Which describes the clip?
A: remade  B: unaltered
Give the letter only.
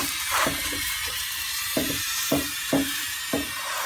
A